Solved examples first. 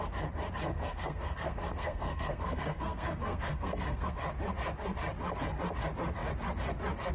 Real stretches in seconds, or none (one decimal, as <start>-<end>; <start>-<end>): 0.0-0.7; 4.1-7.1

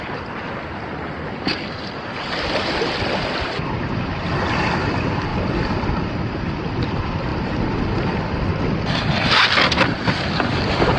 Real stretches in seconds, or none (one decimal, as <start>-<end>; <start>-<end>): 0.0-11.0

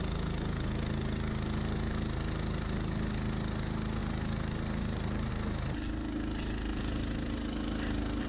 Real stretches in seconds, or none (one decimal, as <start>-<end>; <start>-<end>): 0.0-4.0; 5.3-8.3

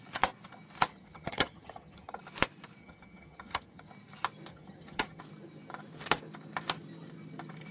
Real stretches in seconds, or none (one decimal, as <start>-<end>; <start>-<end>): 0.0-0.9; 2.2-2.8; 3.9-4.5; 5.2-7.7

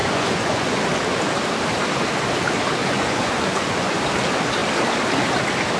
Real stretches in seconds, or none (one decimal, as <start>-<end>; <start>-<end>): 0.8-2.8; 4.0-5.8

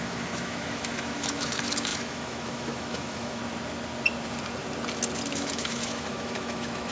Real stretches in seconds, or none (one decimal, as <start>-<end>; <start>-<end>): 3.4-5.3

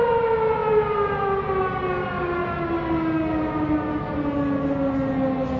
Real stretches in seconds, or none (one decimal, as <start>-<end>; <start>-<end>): 0.0-5.6